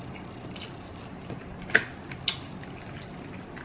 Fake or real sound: real